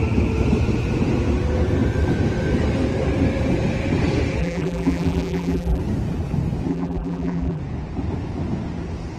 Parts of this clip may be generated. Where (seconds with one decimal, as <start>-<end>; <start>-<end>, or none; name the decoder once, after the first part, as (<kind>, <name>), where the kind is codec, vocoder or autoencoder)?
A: 4.4-5.8 (vocoder, BigVGAN v2); 6.7-7.6